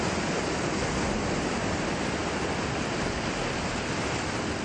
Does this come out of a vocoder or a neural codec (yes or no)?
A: no